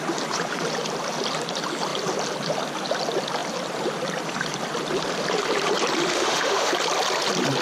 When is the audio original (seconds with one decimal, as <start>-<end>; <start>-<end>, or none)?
0.0-6.1; 6.7-7.6